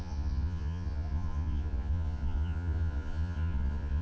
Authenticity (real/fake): fake